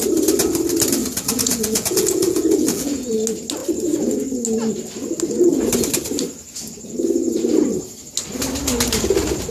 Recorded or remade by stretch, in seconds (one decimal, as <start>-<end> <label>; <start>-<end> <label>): 0.0-1.0 recorded; 1.0-3.1 remade; 3.1-9.5 recorded